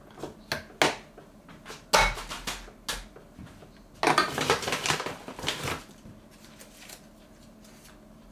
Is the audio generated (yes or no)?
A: no